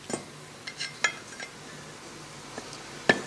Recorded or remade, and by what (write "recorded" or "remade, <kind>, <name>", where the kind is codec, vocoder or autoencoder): recorded